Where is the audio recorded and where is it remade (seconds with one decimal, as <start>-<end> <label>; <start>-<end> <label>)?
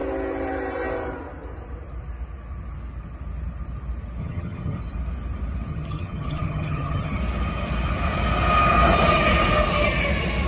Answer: 0.0-4.2 recorded; 4.2-4.8 remade; 4.8-5.7 recorded; 5.7-7.2 remade; 7.2-10.5 recorded